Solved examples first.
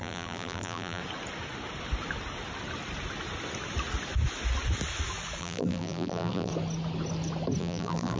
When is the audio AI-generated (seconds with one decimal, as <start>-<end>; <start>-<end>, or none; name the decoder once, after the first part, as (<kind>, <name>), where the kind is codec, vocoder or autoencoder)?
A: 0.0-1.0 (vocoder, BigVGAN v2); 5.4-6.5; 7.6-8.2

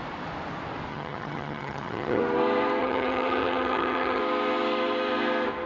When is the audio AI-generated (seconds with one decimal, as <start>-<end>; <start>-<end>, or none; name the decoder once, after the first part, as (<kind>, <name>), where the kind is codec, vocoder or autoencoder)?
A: 0.9-2.2 (vocoder, HiFi-GAN); 2.8-4.2

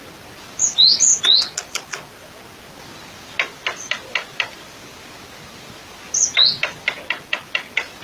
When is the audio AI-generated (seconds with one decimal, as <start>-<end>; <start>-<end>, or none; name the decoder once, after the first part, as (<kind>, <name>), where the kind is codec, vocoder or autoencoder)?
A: none

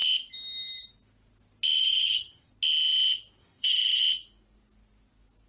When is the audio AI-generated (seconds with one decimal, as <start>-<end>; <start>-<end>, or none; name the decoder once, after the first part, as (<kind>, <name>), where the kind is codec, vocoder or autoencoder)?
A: 1.8-2.5 (vocoder, HiFi-GAN); 3.4-4.0

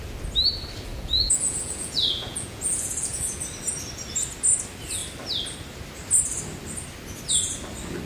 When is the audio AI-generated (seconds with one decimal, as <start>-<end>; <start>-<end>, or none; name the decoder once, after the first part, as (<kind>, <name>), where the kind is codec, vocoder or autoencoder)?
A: 0.9-3.4 (vocoder, Vocos)

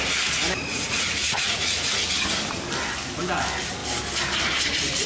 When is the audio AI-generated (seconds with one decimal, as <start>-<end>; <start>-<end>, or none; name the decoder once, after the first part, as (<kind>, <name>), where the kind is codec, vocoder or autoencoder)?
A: 0.7-2.1 (vocoder, Vocos)

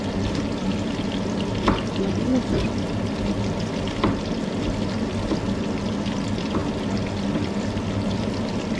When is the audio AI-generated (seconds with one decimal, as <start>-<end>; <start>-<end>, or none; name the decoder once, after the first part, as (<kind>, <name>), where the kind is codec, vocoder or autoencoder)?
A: none

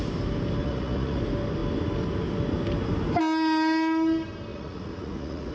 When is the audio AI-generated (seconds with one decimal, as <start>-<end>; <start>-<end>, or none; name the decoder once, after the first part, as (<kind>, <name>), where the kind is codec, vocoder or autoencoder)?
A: 0.6-1.2 (vocoder, Vocos); 4.5-5.5